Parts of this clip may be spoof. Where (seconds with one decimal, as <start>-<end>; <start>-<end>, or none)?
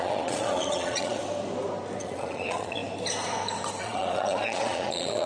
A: 0.0-1.2; 2.0-2.8; 3.8-5.3